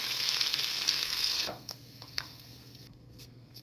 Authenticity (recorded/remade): remade